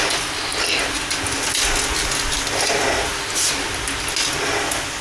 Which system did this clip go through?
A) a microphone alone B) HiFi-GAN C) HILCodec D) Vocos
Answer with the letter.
A